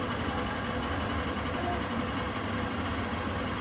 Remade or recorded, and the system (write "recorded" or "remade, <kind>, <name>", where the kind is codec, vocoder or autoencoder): recorded